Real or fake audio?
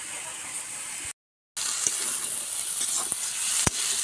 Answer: real